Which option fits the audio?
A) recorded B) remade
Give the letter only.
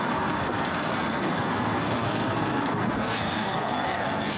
B